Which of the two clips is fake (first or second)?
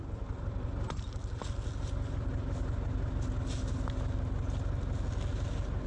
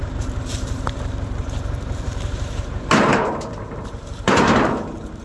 second